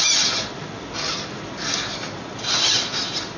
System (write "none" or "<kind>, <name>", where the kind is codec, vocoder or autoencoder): none